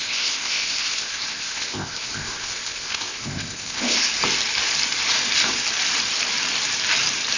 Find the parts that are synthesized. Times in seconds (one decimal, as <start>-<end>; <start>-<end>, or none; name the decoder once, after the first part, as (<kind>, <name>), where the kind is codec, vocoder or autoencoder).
0.0-4.1 (codec, ZipCodec)